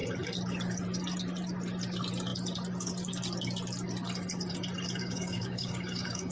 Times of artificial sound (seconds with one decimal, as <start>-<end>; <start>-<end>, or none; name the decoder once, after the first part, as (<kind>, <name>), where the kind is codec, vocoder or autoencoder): 5.0-6.3 (codec, DAC)